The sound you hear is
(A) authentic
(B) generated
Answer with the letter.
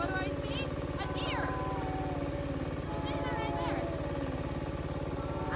A